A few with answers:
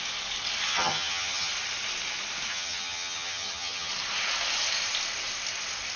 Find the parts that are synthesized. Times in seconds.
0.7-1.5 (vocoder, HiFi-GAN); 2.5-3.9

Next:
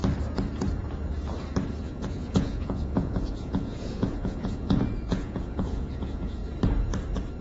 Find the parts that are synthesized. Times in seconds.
1.8-6.4 (vocoder, Vocos)

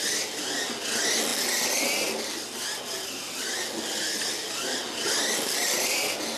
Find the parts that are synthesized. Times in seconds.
none

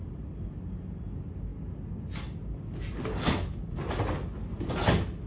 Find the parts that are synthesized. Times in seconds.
none